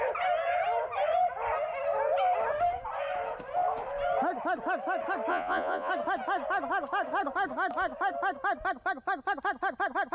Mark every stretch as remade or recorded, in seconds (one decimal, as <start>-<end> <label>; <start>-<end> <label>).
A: 0.0-5.3 recorded; 5.3-5.9 remade; 5.9-10.1 recorded